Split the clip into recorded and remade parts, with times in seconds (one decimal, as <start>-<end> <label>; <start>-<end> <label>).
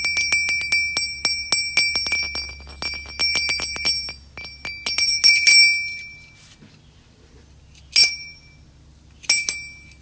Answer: 0.0-10.0 recorded